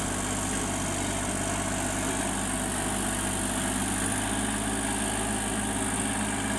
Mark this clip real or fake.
real